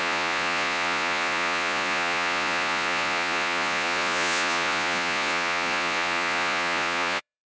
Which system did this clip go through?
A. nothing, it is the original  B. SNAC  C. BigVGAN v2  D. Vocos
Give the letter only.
D